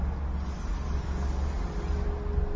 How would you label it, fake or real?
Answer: real